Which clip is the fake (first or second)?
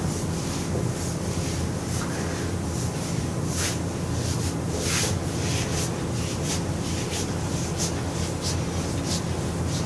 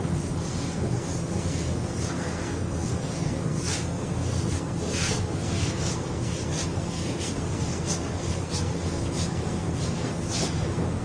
second